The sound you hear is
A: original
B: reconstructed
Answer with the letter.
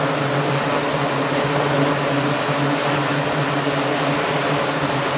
A